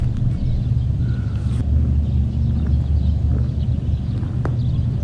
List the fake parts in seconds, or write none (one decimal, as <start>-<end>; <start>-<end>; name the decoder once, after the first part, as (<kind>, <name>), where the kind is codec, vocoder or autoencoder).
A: none